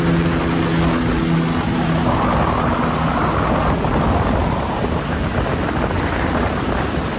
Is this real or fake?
real